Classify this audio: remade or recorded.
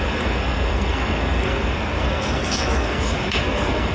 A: remade